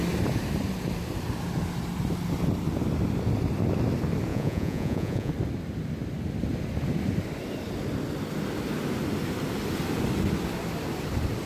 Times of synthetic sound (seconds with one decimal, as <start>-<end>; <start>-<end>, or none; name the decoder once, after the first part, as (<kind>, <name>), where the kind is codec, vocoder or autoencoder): 4.3-5.3 (vocoder, Vocos)